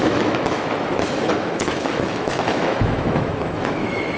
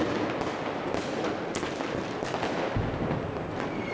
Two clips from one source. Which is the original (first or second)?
second